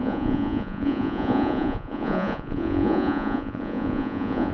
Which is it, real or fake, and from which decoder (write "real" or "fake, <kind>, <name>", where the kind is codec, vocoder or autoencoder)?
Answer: fake, vocoder, Vocos